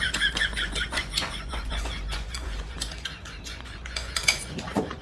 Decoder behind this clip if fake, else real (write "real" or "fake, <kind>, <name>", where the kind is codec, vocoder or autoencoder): fake, vocoder, Vocos